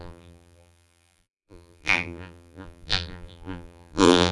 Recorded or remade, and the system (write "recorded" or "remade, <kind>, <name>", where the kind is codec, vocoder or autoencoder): remade, vocoder, BigVGAN v2